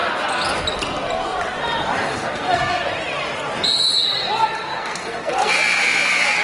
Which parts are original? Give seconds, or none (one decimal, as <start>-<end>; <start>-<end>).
0.0-2.0; 2.9-4.7; 5.5-6.4